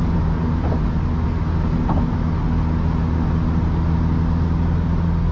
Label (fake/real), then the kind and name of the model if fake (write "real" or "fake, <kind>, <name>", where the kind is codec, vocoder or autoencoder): real